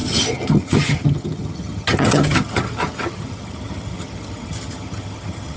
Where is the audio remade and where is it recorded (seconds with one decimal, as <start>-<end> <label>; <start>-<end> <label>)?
0.0-5.6 remade